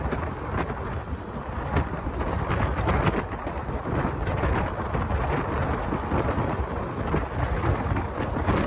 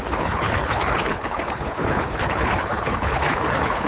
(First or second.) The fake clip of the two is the second